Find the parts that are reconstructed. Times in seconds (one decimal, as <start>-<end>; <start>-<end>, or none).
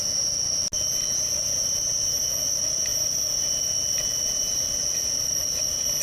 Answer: none